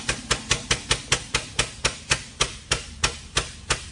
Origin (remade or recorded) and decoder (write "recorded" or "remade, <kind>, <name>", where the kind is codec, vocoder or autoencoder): remade, vocoder, BigVGAN v2